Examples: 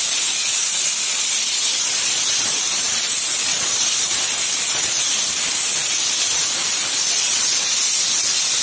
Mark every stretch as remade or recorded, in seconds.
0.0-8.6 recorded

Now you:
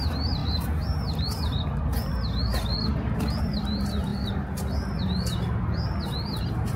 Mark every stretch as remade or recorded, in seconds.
0.0-0.4 remade; 0.4-3.4 recorded; 3.4-4.1 remade; 4.1-5.9 recorded; 5.9-6.8 remade

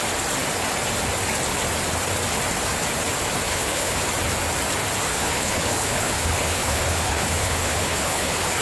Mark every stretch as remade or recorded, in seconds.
0.0-3.5 recorded; 3.5-4.0 remade; 4.0-5.1 recorded; 5.1-8.6 remade

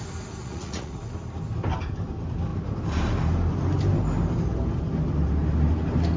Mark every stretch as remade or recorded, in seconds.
0.0-0.4 recorded; 0.4-1.0 remade; 1.0-6.2 recorded